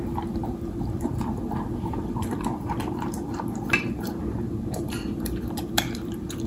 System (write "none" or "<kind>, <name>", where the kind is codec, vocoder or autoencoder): vocoder, BigVGAN v2